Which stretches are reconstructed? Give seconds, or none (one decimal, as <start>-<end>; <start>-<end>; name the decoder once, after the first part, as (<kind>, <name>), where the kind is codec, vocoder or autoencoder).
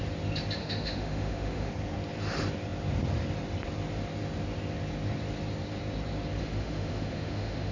0.6-1.7 (autoencoder, DAC-VAE); 6.4-7.7